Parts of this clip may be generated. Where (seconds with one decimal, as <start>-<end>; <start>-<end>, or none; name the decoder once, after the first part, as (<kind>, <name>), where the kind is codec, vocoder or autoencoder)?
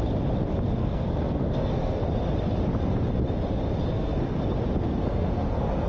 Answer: 0.8-2.0 (codec, SNAC); 3.9-4.4; 4.9-5.9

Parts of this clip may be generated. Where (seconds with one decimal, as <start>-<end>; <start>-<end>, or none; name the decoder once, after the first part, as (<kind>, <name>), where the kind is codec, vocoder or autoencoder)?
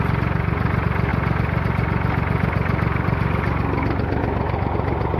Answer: none